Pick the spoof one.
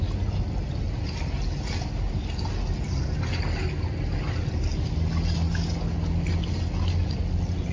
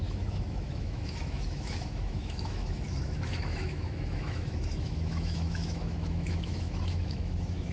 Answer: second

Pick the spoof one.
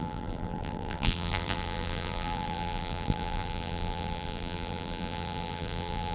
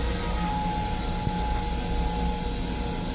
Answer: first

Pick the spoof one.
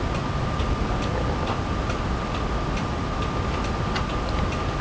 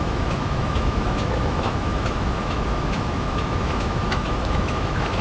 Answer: second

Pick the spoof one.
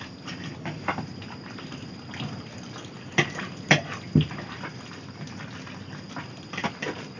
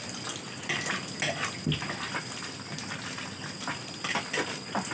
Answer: first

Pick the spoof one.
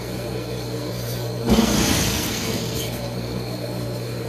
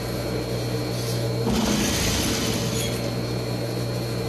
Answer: first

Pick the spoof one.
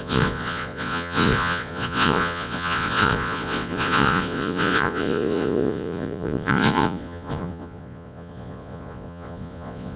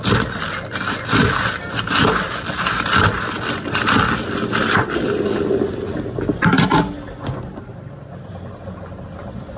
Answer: first